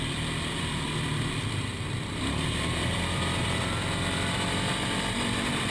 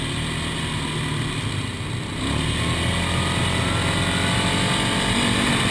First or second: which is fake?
first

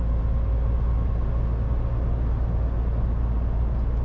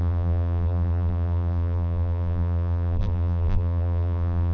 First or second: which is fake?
second